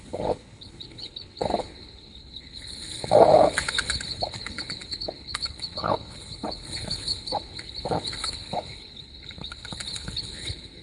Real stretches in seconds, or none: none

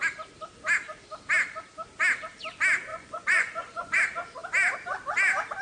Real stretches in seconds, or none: 0.0-2.9; 4.0-5.6

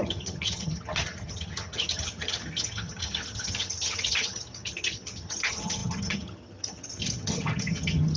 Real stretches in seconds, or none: none

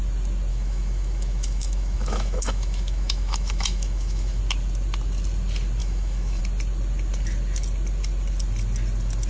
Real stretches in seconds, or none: 0.0-0.5; 4.4-5.8; 6.4-9.3